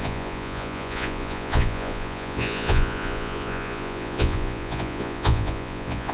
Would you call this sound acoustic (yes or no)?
no